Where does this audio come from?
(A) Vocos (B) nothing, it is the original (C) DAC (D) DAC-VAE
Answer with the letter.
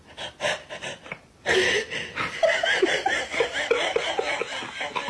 B